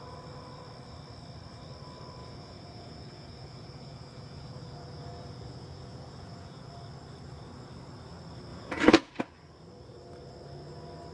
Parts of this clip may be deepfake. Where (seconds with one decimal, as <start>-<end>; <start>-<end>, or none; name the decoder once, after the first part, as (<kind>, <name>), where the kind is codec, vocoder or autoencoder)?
2.2-6.7 (vocoder, Vocos); 8.5-9.2